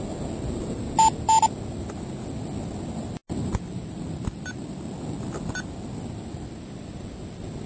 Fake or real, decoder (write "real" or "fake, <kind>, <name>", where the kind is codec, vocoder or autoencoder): real